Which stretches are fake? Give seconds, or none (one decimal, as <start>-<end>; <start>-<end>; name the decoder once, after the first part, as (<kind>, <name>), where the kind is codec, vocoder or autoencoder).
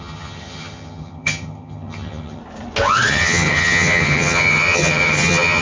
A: 0.0-2.4 (vocoder, HiFi-GAN); 3.1-5.6